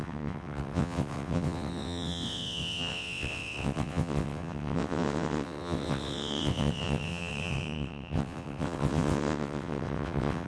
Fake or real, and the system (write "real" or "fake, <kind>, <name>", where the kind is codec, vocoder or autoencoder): fake, vocoder, WaveNeXt